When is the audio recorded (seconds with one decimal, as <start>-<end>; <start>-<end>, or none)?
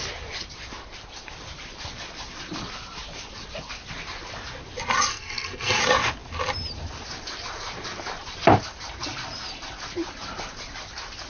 0.0-5.1; 5.8-11.3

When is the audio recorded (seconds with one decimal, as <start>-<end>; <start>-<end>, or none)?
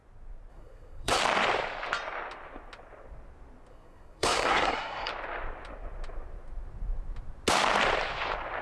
0.0-0.5; 1.2-3.7; 5.1-8.6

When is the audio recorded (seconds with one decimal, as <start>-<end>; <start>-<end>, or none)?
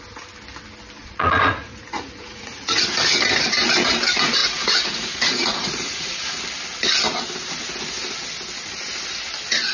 0.0-1.0; 2.8-4.4; 6.4-9.7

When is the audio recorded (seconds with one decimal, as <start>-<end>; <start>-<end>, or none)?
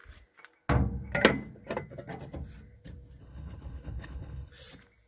0.0-3.2; 4.5-5.1